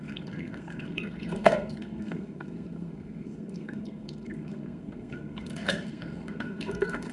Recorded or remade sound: remade